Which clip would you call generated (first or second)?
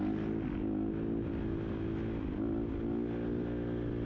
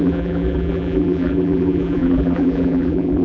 second